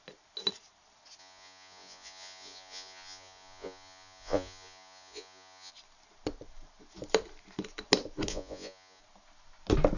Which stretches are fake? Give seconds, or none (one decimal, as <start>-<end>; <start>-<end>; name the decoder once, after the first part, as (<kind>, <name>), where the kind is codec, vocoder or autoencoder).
1.2-5.7 (vocoder, Vocos); 8.3-9.0